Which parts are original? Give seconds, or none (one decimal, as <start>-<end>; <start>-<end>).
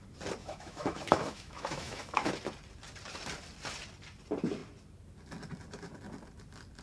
0.0-0.4; 2.3-6.8